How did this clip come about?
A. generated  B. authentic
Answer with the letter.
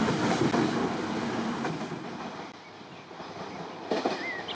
B